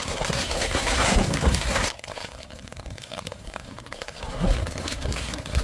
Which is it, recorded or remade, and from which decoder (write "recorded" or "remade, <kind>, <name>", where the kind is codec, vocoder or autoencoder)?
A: remade, codec, SNAC